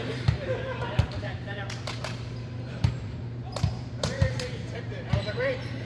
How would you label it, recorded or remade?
remade